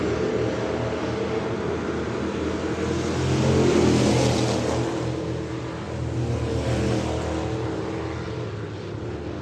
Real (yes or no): yes